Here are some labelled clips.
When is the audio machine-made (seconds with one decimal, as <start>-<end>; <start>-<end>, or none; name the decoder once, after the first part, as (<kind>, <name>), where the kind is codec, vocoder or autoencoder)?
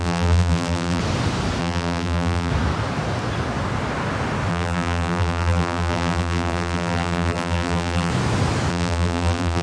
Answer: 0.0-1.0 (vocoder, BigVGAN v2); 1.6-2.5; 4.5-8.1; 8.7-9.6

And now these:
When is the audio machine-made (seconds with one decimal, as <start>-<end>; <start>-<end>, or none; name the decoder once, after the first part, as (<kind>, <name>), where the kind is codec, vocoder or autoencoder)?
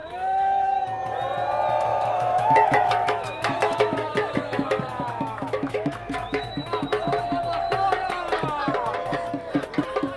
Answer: 0.0-0.8 (autoencoder, DAC-VAE); 1.9-6.5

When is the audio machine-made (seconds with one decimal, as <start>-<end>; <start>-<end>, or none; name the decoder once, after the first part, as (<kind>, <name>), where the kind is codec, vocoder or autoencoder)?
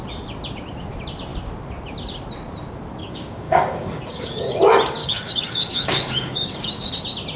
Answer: 3.0-4.6 (codec, DAC); 5.0-6.9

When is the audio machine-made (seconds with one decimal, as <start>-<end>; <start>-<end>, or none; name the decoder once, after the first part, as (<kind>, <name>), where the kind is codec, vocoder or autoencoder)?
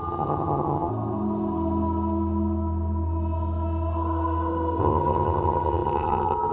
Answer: 0.0-0.9 (vocoder, HiFi-GAN); 4.8-6.5